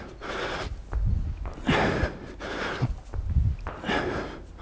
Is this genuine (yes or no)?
yes